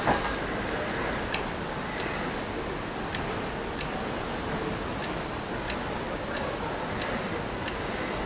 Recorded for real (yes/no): yes